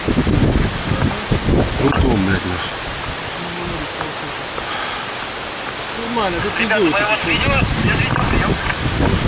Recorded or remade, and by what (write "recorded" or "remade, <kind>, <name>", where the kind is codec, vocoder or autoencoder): recorded